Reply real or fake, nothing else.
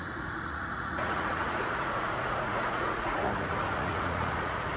fake